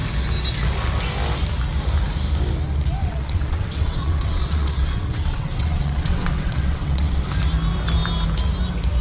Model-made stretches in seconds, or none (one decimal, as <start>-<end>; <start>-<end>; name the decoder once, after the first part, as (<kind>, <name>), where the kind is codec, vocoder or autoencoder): 3.0-7.3 (vocoder, WaveNeXt)